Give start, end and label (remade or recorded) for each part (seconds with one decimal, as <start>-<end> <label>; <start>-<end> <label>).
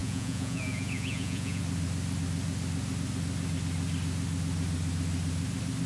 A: 0.0-1.6 remade; 1.6-5.9 recorded